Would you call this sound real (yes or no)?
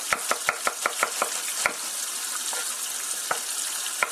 yes